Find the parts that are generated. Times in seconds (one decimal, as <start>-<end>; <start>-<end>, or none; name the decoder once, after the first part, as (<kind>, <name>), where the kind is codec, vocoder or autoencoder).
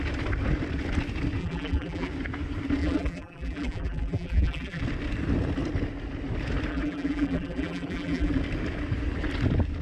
1.4-2.1 (vocoder, BigVGAN v2); 2.8-4.8; 6.7-8.3